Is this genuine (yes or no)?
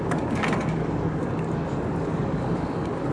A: no